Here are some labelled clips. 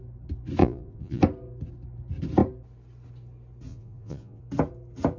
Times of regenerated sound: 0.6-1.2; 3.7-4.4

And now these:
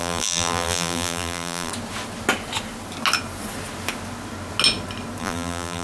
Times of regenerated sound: 0.0-1.7; 5.2-5.8

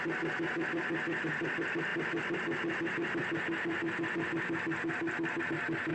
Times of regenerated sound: none

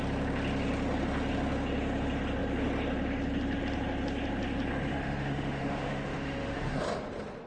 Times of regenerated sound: 4.9-6.8

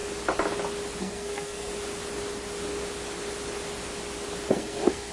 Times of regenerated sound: 1.0-1.7; 4.5-5.1